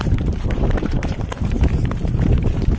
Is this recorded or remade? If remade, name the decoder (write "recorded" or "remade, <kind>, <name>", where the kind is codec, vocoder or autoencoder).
remade, vocoder, BigVGAN v2